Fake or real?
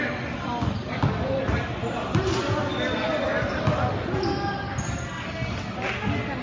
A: real